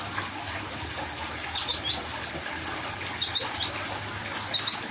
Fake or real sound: real